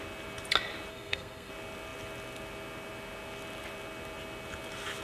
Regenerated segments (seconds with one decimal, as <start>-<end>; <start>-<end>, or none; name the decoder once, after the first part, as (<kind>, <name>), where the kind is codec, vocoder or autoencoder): 0.9-1.5 (codec, SNAC)